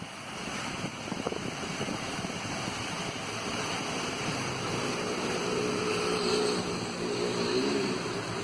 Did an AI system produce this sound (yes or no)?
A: yes